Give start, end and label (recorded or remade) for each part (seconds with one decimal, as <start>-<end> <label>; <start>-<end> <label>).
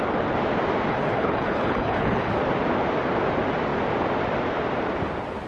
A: 0.0-0.9 recorded; 0.9-2.4 remade; 2.4-5.5 recorded